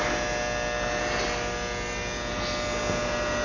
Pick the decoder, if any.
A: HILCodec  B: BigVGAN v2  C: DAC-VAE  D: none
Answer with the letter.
D